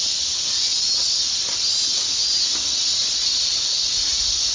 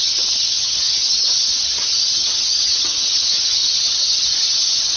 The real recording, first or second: first